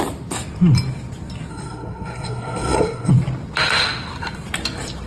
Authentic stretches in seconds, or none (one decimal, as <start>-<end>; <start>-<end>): 0.0-1.5; 3.1-5.1